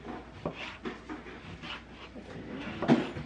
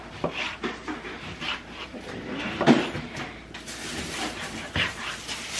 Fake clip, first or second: second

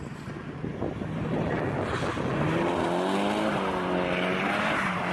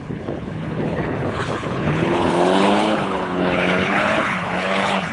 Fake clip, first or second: second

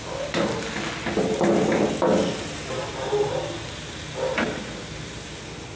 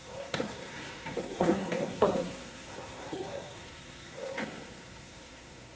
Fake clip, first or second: second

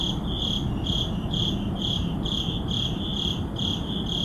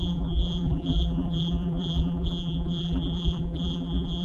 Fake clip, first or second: second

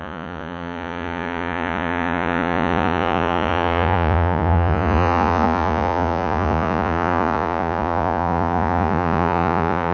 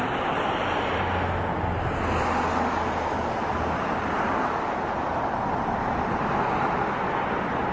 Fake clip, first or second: first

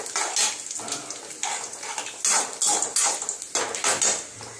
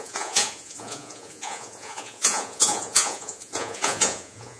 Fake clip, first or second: second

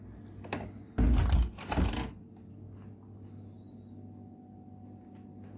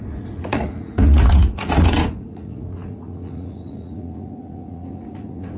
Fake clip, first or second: second